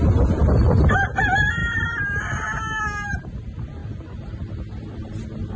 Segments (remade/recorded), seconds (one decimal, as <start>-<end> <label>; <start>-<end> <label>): 0.0-5.6 remade